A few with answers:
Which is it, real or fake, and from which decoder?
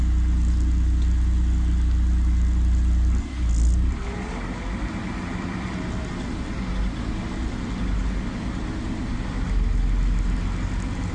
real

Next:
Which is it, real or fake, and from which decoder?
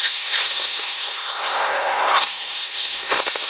fake, codec, SNAC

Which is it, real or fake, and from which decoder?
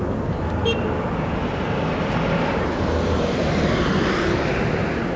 real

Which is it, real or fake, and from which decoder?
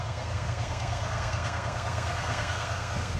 fake, codec, SNAC